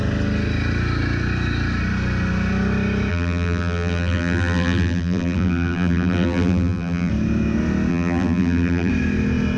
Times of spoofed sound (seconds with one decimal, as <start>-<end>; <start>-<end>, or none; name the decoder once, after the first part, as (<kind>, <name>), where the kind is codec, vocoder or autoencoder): 3.1-7.1 (vocoder, BigVGAN v2); 7.9-8.9